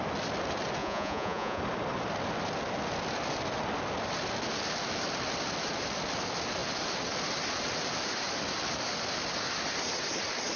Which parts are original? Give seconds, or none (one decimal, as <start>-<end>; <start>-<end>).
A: 0.0-0.8; 1.6-10.6